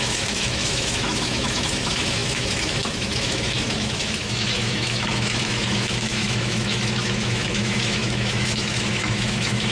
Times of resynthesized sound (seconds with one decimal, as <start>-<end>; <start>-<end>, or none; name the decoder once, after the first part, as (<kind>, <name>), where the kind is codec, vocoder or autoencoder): 0.0-9.7 (autoencoder, DAC-VAE)